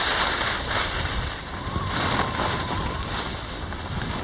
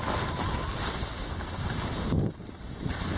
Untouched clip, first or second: second